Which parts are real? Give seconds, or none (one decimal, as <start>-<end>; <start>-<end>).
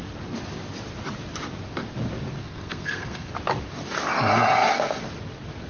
0.0-2.4; 3.3-5.7